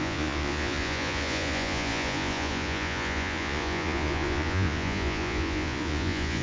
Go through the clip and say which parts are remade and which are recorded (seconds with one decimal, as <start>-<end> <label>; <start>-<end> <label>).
0.0-6.4 remade